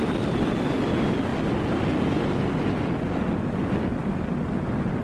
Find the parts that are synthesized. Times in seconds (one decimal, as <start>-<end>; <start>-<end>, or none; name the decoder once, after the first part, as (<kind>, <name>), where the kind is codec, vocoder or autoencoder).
none